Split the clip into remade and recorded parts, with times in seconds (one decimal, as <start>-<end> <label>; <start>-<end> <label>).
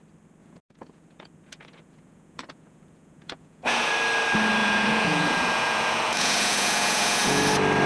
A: 0.0-0.4 recorded; 0.4-3.9 remade; 3.9-4.6 recorded; 4.6-7.4 remade; 7.4-7.9 recorded